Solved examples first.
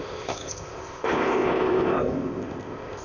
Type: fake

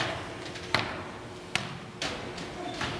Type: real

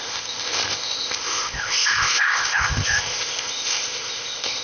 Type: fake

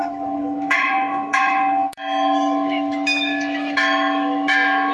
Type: fake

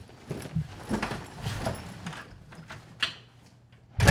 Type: real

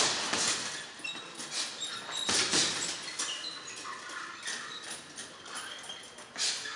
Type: real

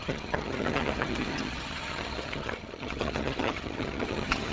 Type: fake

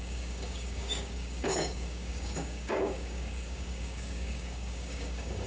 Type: fake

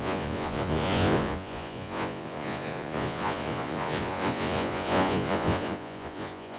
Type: fake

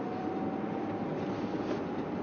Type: real